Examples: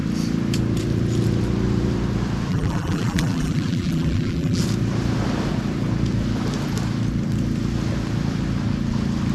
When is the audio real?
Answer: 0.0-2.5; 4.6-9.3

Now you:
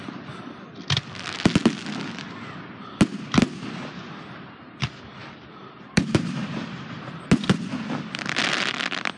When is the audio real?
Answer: 0.0-5.6; 7.1-9.2

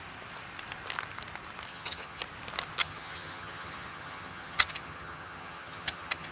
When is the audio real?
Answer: 0.0-1.7; 2.2-2.8

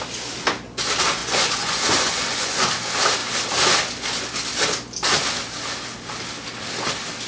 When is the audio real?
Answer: 0.0-1.2; 2.7-7.3

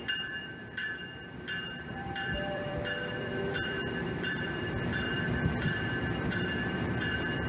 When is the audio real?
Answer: none